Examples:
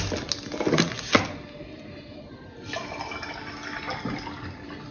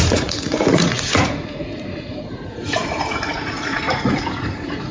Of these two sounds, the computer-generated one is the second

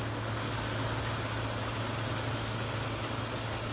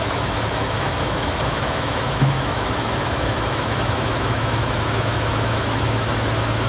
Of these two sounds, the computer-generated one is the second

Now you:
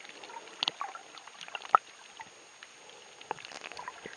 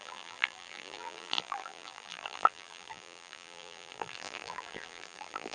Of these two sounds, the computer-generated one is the second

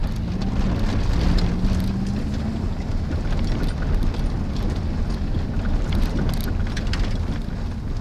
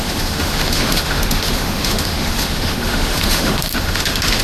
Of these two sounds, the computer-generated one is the second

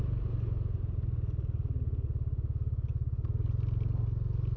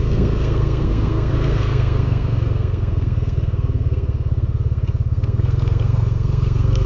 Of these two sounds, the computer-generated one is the second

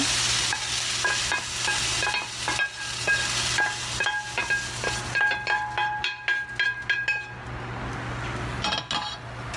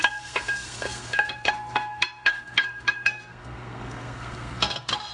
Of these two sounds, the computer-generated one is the second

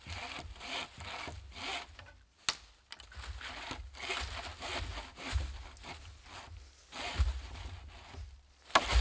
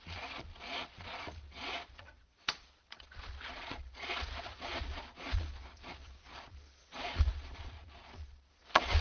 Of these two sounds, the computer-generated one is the second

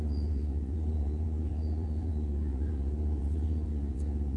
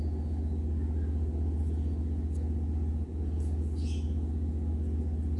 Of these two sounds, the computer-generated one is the first